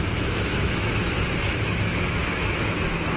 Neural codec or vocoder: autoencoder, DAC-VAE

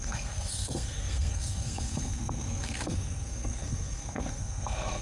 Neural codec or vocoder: codec, SNAC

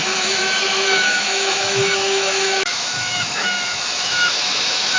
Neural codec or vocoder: autoencoder, DAC-VAE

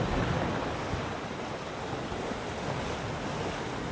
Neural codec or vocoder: none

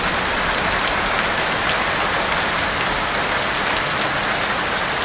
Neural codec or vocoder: none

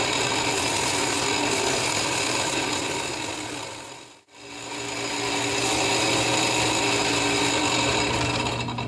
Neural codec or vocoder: none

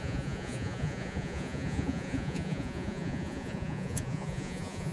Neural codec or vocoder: vocoder, Vocos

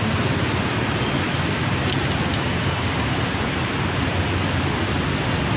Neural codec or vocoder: none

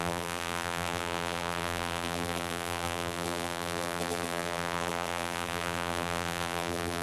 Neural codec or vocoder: vocoder, BigVGAN v2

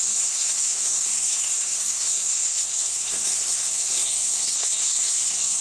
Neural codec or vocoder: codec, SNAC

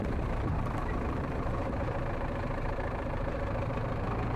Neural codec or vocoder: vocoder, BigVGAN v2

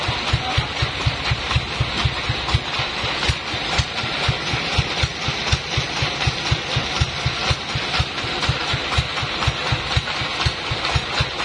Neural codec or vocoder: none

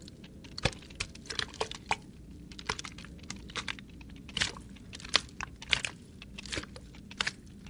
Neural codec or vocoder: none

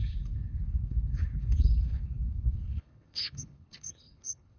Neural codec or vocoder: codec, HILCodec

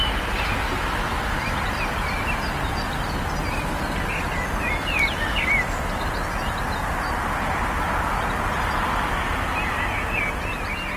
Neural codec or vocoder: none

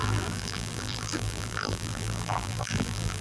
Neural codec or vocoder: vocoder, BigVGAN v2